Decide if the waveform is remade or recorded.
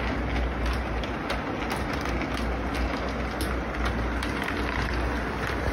recorded